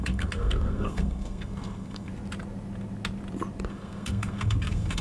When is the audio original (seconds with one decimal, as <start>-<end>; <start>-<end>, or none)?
2.1-3.7